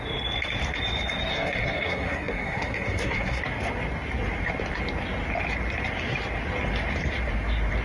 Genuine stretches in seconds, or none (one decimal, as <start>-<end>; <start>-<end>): 0.0-1.3; 3.4-7.8

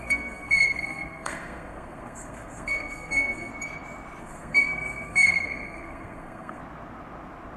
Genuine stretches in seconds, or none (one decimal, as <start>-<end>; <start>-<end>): 3.5-4.2; 6.6-7.6

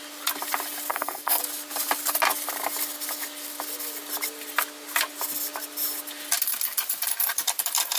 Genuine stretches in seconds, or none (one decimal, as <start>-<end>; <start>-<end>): 0.0-0.9; 1.4-8.0